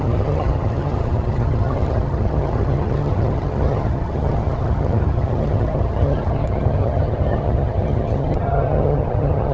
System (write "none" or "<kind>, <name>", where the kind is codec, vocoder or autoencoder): vocoder, HiFi-GAN